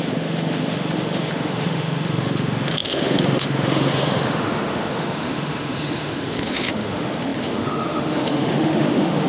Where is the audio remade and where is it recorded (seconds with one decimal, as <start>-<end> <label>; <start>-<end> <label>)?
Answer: 0.0-9.3 remade